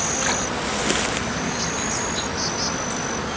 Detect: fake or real real